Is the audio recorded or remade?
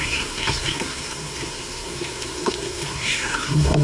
remade